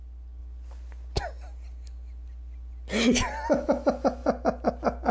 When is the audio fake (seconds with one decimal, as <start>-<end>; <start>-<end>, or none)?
none